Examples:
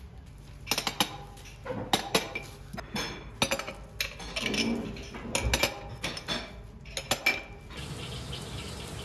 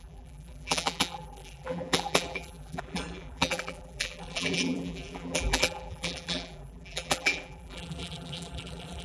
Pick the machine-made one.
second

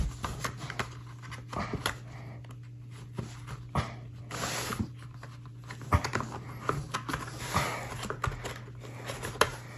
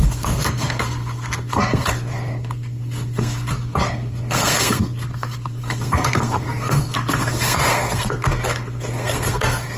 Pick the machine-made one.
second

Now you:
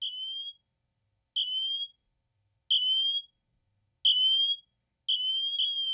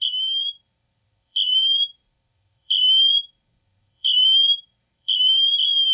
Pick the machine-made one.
second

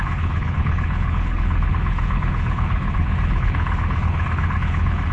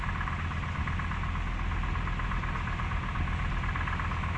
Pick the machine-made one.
first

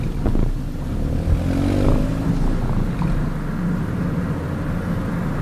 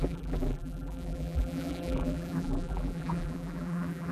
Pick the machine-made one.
second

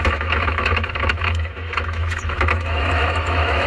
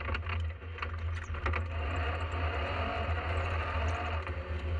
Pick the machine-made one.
first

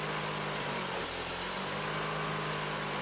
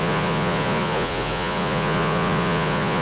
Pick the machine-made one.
second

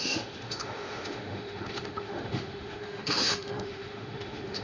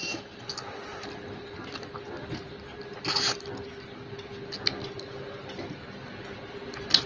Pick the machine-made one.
first